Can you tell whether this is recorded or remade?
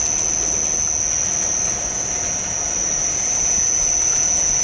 recorded